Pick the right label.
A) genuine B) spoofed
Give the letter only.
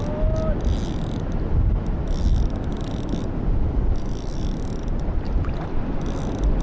A